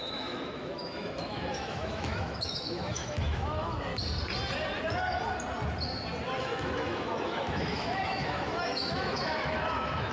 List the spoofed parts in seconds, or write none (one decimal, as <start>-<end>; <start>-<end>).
0.0-3.9; 6.4-10.1